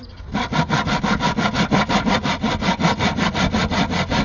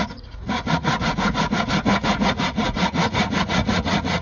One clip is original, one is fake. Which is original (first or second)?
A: first